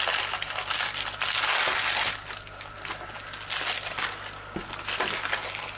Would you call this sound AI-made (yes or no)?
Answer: no